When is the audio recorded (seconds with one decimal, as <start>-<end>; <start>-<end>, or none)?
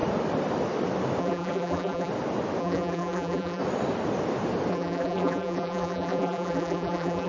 0.0-1.2; 2.1-2.6; 3.6-4.7